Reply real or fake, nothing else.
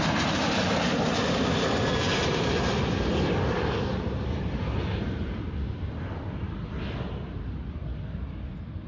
real